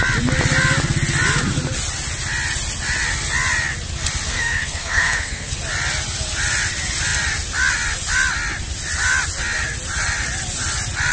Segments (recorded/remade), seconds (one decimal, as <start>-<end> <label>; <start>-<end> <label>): 0.0-4.3 recorded; 4.3-5.5 remade; 5.5-11.1 recorded